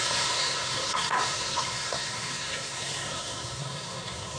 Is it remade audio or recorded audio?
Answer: remade